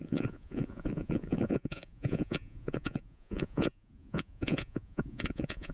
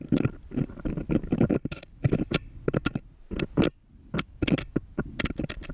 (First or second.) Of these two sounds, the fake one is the first